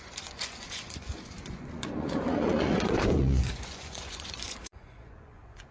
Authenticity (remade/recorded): remade